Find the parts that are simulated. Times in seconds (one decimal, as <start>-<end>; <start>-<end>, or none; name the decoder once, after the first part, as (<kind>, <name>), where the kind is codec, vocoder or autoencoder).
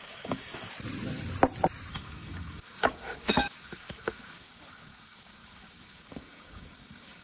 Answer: 0.0-0.7 (codec, DAC); 1.9-7.2